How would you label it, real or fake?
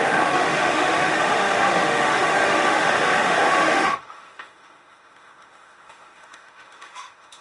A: fake